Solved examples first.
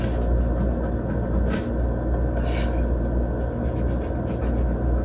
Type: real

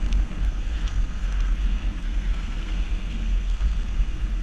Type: fake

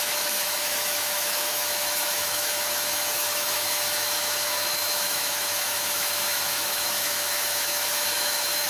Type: fake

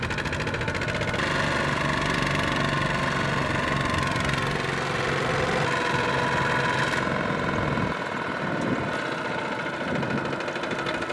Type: real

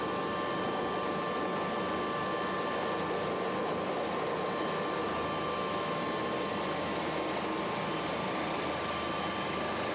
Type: real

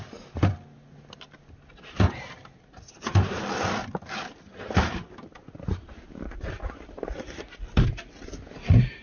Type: real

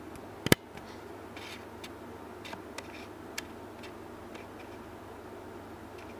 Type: real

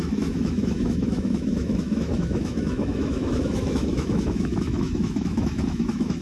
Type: fake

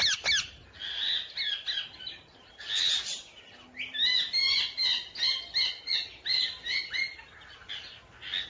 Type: real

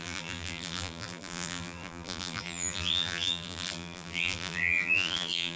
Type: fake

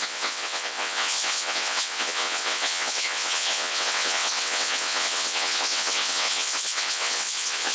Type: fake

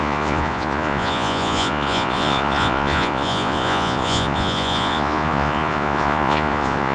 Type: fake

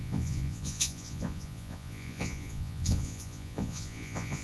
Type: fake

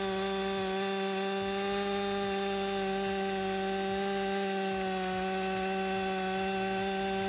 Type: real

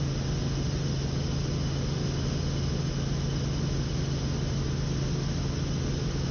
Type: real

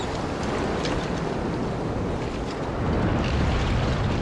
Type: real